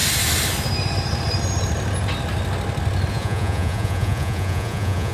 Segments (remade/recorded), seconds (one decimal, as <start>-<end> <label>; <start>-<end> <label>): 0.0-3.1 recorded; 3.1-5.1 remade

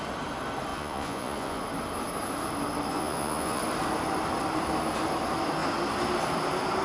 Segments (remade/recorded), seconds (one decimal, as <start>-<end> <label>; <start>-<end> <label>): 0.0-0.7 recorded; 0.7-1.6 remade; 1.6-2.9 recorded; 2.9-3.6 remade; 3.6-6.8 recorded

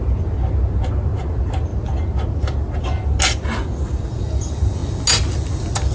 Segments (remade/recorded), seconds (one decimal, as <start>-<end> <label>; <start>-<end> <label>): 0.0-5.9 recorded

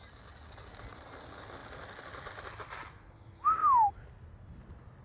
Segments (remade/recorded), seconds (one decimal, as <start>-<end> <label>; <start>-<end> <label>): 0.0-5.0 recorded

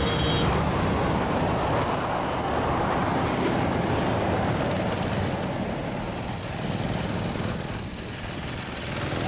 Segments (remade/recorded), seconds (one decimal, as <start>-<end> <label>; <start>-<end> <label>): 0.0-9.3 recorded

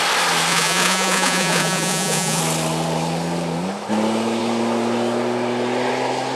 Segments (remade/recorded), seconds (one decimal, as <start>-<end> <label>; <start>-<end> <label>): 0.0-0.5 recorded; 0.5-2.4 remade; 2.4-6.4 recorded